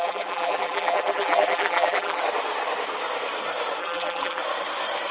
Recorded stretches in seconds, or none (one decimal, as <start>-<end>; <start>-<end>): 2.2-3.8; 4.4-5.1